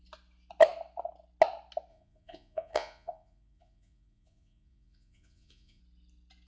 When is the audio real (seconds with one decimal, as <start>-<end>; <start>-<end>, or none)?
0.0-1.9; 5.8-6.5